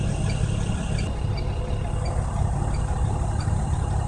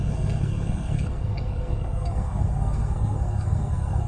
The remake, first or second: second